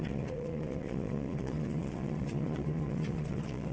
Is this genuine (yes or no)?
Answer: no